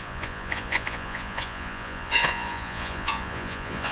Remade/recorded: remade